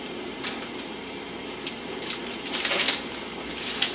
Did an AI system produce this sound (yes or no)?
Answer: yes